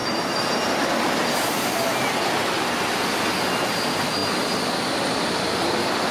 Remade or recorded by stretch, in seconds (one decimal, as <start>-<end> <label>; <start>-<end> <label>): 0.0-6.1 recorded